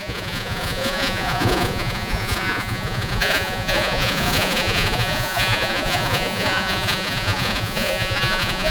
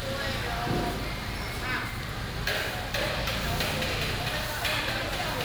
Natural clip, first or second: second